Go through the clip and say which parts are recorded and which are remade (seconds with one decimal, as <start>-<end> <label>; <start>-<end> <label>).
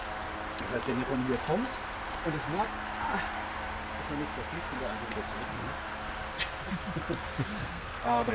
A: 0.0-7.6 recorded; 7.6-8.3 remade